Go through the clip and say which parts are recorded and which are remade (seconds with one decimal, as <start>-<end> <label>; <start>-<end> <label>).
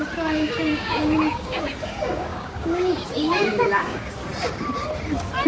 0.0-4.2 remade; 4.2-5.5 recorded